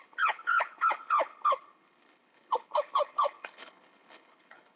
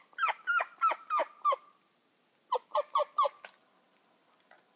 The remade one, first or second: first